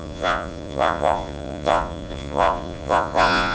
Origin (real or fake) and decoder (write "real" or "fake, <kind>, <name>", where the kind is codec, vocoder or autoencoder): fake, vocoder, Vocos